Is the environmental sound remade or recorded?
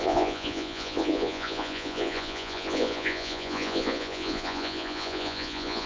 remade